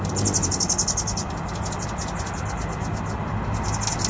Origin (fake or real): real